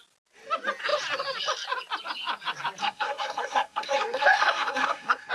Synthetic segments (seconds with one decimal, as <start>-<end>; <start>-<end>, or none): 2.8-5.3